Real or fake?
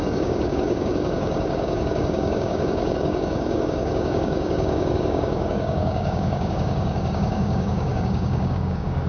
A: fake